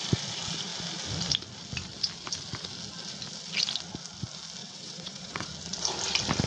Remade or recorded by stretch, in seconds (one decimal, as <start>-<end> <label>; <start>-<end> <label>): 0.0-4.6 recorded; 4.6-5.5 remade; 5.5-6.5 recorded